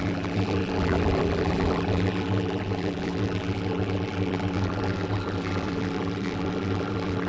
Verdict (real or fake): fake